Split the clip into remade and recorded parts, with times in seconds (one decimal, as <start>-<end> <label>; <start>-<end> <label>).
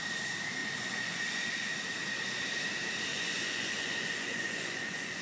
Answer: 0.0-0.6 recorded; 0.6-1.7 remade; 1.7-3.1 recorded; 3.1-5.2 remade